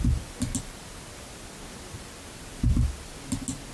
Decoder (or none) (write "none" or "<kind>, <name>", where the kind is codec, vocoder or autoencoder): none